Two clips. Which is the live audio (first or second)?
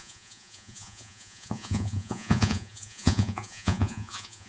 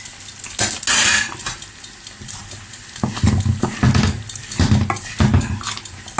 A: second